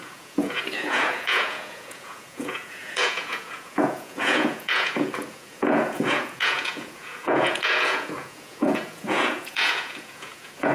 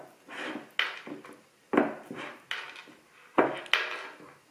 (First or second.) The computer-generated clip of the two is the first